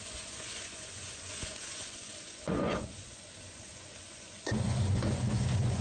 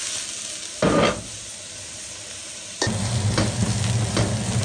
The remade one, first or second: first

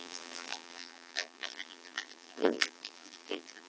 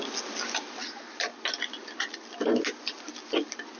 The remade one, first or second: first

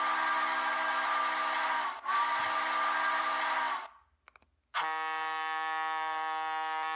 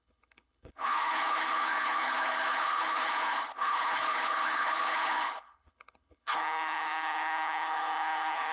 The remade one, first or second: second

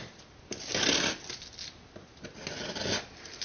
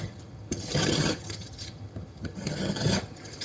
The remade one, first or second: second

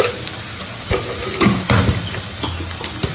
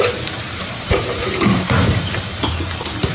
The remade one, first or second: second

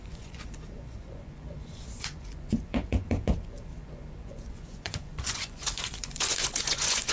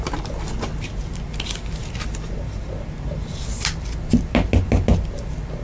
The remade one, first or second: first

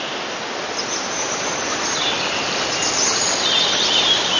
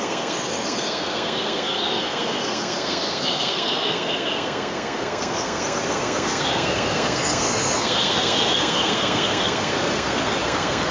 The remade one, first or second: second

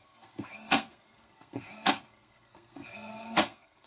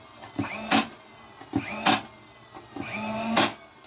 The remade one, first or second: first